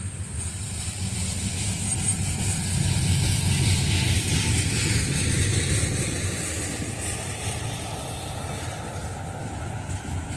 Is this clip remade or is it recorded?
recorded